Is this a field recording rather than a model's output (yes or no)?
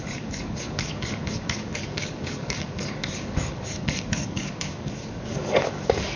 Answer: no